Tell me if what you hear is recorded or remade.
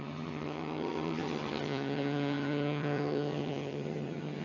remade